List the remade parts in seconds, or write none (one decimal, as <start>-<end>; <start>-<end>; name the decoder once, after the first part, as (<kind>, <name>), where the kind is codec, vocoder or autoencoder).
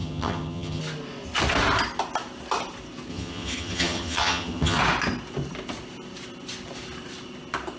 0.0-0.8 (vocoder, HiFi-GAN); 3.1-4.8